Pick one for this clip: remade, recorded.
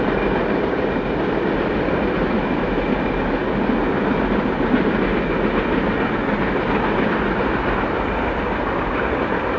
recorded